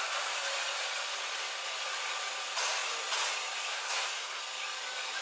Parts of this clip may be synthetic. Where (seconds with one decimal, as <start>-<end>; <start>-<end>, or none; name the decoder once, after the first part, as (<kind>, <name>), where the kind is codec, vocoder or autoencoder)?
3.7-4.4 (codec, SNAC)